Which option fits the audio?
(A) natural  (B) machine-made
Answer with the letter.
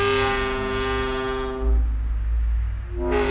A